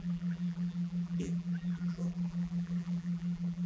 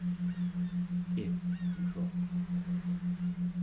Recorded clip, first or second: second